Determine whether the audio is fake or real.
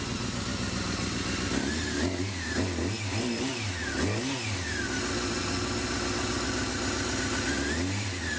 real